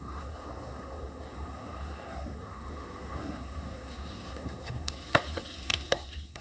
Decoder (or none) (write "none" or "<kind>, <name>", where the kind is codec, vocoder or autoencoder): codec, SNAC